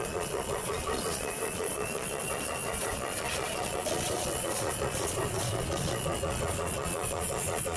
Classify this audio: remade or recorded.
remade